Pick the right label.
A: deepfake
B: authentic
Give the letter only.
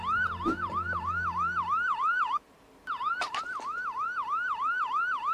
A